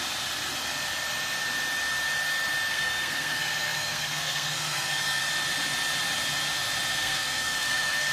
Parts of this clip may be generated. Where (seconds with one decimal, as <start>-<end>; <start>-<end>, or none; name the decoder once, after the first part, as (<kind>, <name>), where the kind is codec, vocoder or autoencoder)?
2.7-5.2 (codec, SNAC); 6.9-8.1